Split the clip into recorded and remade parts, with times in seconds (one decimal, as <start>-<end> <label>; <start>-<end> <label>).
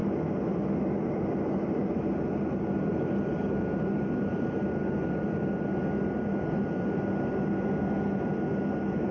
0.0-9.1 recorded